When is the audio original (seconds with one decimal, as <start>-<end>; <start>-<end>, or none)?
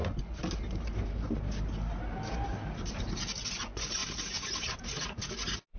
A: 0.0-3.5; 4.0-5.8